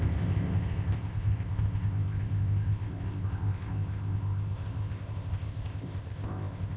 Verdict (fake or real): fake